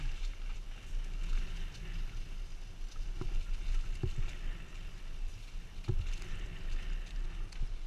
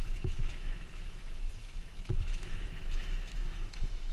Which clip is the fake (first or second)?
second